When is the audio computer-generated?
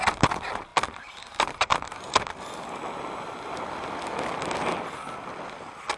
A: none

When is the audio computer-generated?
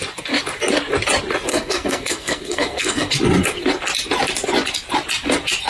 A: 1.5-3.1 (codec, SNAC)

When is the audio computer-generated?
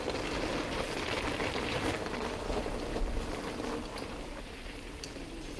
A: 1.4-3.0 (vocoder, BigVGAN v2); 3.9-5.6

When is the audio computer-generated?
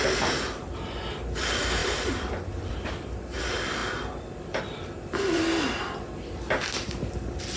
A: 1.8-2.9 (vocoder, BigVGAN v2)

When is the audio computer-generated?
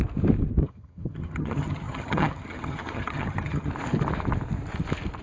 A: 0.6-3.7 (vocoder, HiFi-GAN)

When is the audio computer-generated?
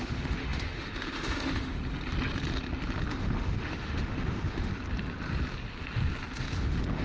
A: 0.0-1.8 (autoencoder, DAC-VAE); 3.1-4.7; 6.4-7.0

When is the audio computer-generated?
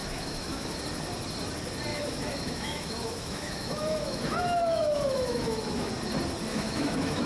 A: 0.0-0.8 (autoencoder, DAC-VAE); 1.9-5.9; 6.5-7.3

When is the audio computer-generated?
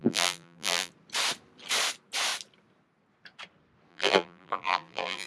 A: 0.0-0.9 (vocoder, BigVGAN v2); 3.9-5.3